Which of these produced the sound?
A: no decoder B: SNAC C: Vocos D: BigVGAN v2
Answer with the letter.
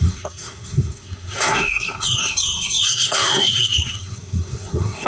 B